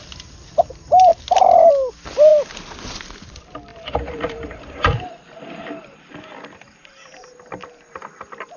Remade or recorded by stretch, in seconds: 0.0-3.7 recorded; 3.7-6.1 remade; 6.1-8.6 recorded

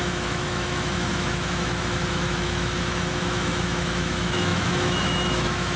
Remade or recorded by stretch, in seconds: 0.0-5.8 remade

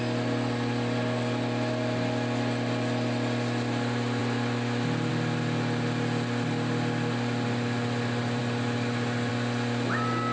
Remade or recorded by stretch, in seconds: 0.0-10.3 recorded

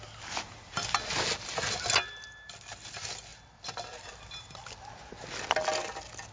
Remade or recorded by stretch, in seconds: 0.0-6.3 recorded

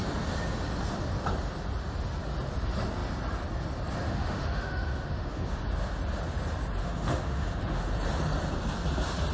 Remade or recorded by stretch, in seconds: 0.0-4.1 recorded; 4.1-5.6 remade; 5.6-6.8 recorded; 6.8-7.8 remade; 7.8-9.3 recorded

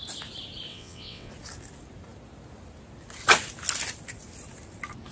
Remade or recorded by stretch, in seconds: 0.0-0.7 recorded; 0.7-1.3 remade; 1.3-5.1 recorded

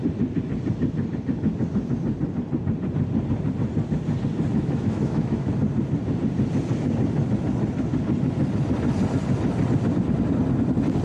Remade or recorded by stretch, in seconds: 0.0-4.5 recorded; 4.5-5.5 remade; 5.5-11.0 recorded

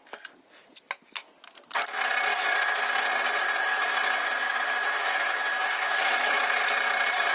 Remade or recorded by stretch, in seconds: 0.0-3.7 recorded; 3.7-6.6 remade; 6.6-7.3 recorded